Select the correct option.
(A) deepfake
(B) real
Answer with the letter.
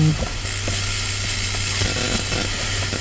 B